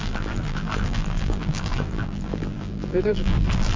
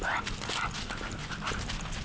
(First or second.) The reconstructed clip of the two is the first